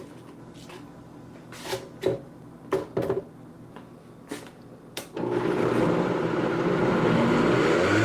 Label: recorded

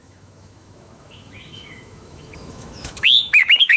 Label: remade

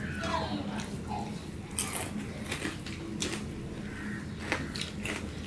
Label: recorded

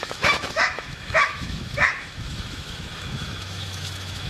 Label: remade